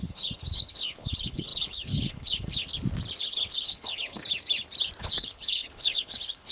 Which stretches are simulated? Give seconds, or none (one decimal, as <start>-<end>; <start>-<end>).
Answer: 0.0-2.7; 3.2-4.2; 5.0-6.5